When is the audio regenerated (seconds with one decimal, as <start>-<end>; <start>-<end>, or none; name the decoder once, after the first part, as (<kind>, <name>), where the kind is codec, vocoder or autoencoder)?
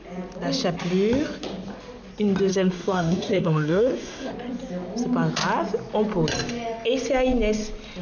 2.5-4.3 (codec, SNAC)